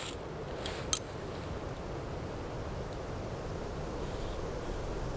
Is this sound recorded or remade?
recorded